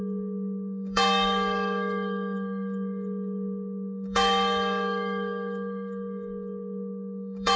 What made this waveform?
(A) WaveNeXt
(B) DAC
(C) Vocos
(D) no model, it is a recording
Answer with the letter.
B